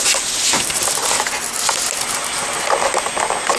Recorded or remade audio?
recorded